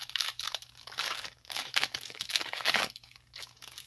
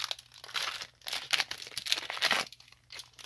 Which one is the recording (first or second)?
second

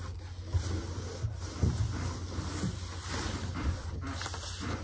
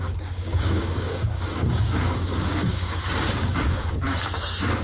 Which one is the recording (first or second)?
first